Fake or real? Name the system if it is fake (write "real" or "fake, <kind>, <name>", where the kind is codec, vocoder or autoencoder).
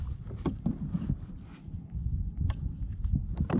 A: real